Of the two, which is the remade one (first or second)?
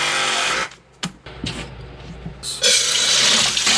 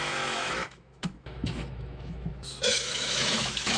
second